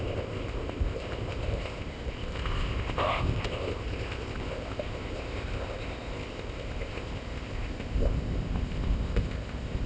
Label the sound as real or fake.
fake